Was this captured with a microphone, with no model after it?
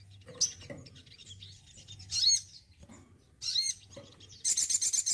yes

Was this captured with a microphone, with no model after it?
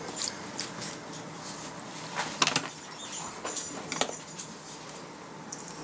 yes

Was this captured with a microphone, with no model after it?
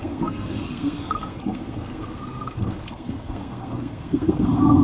no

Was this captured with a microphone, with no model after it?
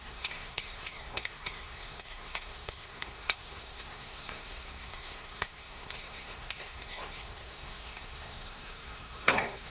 no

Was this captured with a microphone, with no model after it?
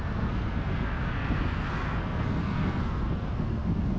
no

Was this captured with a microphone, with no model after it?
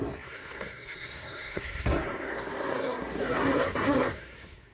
no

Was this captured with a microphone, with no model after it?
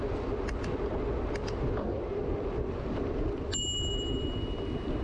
yes